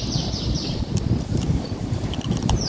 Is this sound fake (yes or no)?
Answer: yes